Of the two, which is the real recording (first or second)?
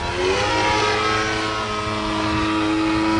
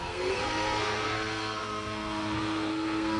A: first